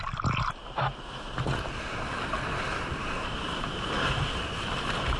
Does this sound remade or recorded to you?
recorded